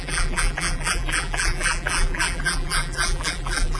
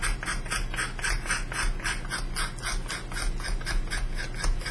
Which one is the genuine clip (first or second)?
second